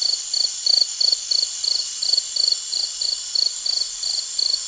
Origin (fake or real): real